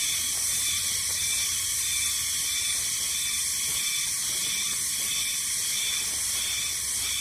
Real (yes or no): no